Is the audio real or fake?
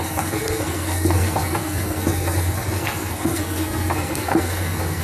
fake